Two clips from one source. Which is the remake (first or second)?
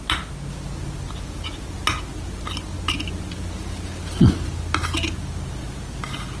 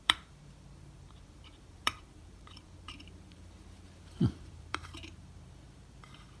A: second